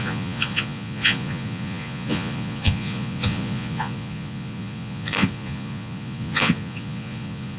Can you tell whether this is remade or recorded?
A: remade